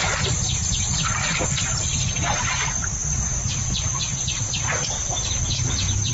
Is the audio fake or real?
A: real